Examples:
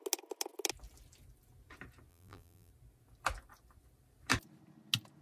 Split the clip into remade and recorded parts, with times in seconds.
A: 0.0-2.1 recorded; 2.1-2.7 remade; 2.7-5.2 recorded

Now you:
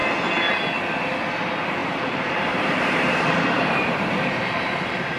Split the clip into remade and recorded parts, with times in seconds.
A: 0.0-1.8 recorded; 1.8-5.2 remade

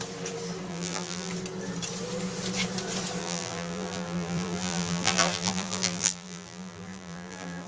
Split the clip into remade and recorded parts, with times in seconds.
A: 0.0-0.7 recorded; 0.7-1.3 remade; 1.3-3.2 recorded; 3.2-7.7 remade